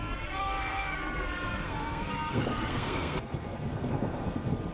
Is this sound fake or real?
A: fake